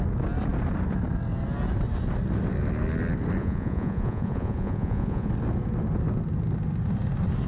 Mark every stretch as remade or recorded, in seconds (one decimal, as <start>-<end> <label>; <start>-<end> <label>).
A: 0.0-3.4 recorded; 3.4-5.3 remade; 5.3-7.5 recorded